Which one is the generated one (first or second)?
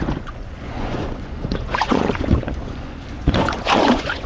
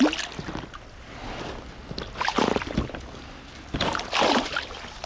first